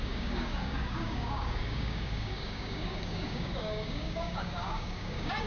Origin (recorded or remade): remade